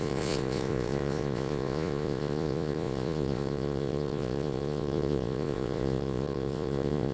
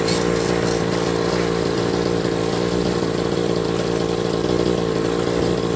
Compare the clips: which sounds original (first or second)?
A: second